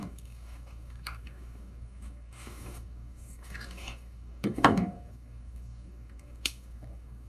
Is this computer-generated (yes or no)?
yes